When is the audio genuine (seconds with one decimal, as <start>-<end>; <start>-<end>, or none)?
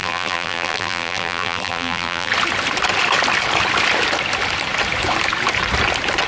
2.3-6.3